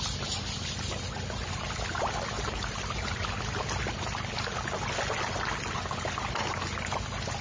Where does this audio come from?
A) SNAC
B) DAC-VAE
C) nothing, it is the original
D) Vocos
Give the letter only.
C